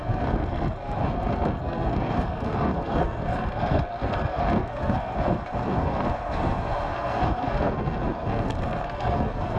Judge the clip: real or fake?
fake